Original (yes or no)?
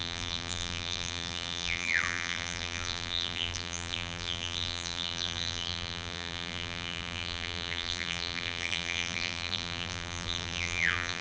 no